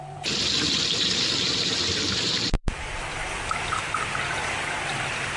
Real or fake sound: fake